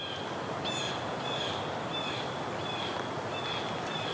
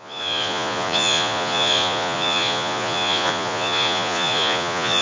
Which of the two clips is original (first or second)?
first